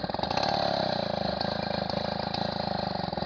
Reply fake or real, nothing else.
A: real